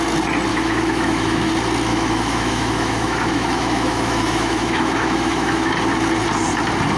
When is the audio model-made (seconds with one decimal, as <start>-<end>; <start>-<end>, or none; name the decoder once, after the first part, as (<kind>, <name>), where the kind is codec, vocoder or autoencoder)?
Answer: 0.5-1.5 (autoencoder, DAC-VAE); 1.9-5.7